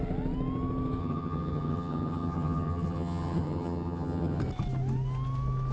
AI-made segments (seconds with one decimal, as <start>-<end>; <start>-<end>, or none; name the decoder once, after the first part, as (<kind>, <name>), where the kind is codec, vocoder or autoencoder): 1.0-4.4 (vocoder, HiFi-GAN)